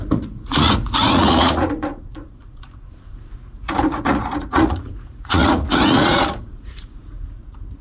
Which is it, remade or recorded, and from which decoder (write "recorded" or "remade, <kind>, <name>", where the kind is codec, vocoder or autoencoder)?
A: remade, vocoder, Vocos